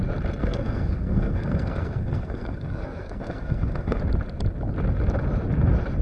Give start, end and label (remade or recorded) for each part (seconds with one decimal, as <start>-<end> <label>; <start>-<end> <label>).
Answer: 0.0-0.4 recorded; 0.4-4.0 remade; 4.0-6.0 recorded